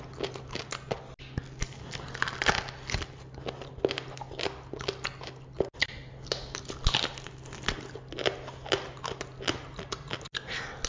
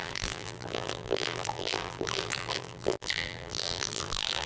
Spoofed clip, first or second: second